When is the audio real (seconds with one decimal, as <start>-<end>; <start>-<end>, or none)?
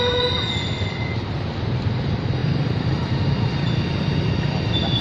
0.0-2.4; 3.2-5.0